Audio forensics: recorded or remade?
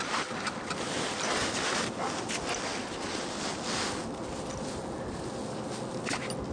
recorded